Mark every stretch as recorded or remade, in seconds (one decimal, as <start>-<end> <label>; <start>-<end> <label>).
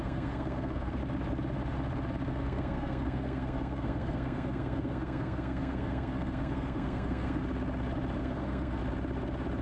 0.0-1.0 remade; 1.0-2.3 recorded; 2.3-7.4 remade; 7.4-8.2 recorded; 8.2-8.8 remade; 8.8-9.6 recorded